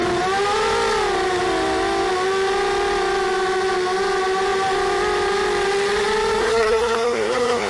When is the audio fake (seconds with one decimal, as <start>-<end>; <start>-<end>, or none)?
6.4-7.7